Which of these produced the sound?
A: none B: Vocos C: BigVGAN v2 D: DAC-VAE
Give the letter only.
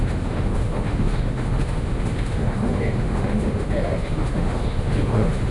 D